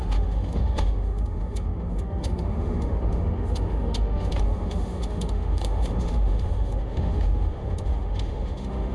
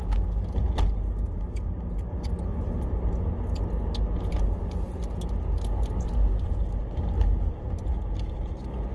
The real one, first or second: second